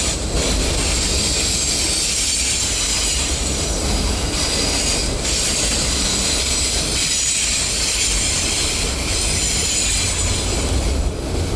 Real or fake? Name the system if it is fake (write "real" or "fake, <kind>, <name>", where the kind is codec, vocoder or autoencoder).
real